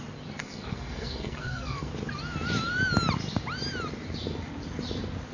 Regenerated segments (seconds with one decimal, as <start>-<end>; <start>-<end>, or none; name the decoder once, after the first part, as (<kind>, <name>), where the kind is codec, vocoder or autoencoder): 0.4-1.9 (codec, SNAC)